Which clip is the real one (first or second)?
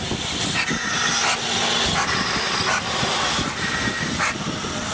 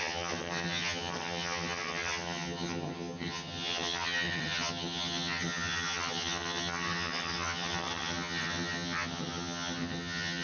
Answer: first